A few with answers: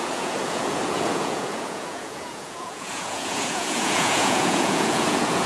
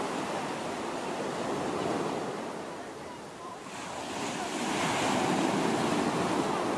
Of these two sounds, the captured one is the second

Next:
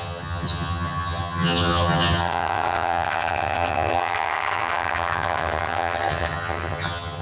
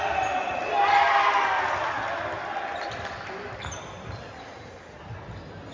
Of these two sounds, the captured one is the second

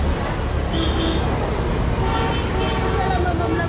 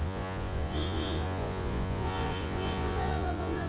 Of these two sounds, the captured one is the first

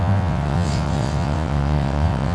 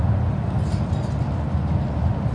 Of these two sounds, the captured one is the second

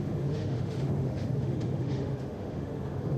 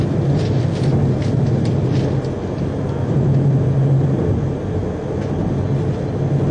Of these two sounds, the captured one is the second